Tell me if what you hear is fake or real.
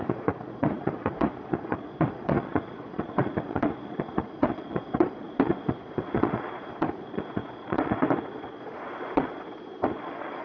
fake